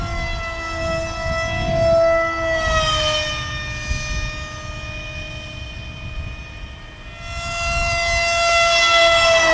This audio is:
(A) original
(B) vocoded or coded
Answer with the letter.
A